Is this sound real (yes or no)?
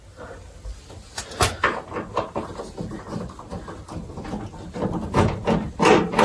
yes